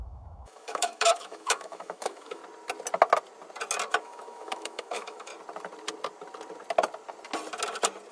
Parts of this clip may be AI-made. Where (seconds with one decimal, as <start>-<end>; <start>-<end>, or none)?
0.0-2.4; 4.0-5.3